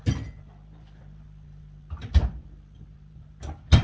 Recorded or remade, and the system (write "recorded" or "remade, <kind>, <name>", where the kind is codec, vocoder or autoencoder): recorded